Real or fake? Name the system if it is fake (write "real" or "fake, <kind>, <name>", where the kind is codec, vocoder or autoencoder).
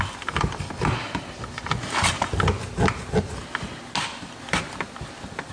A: real